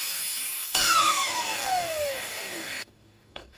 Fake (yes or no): yes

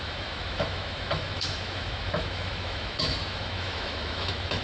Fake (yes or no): yes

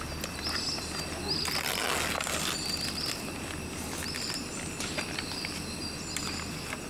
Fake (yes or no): no